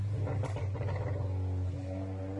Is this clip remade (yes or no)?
no